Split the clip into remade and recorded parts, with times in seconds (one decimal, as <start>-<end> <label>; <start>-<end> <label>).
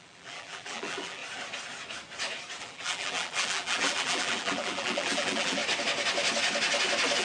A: 0.0-1.2 remade; 1.2-2.6 recorded; 2.6-5.6 remade; 5.6-7.2 recorded